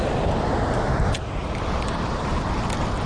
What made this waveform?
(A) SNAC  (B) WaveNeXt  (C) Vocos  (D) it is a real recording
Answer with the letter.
D